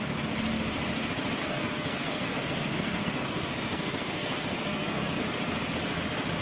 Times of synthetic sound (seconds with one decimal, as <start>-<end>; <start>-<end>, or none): 1.4-5.2